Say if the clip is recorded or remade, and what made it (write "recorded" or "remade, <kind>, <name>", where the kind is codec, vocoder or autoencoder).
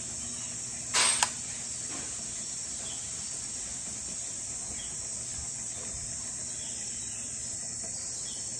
recorded